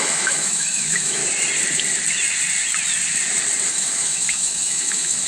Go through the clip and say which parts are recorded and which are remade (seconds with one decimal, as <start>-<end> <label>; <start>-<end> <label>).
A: 0.0-1.2 remade; 1.2-3.7 recorded; 3.7-5.3 remade